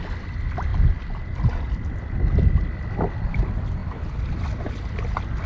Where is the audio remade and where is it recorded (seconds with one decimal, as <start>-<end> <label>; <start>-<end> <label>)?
0.0-0.7 recorded; 0.7-1.2 remade; 1.2-3.8 recorded; 3.8-4.7 remade; 4.7-5.5 recorded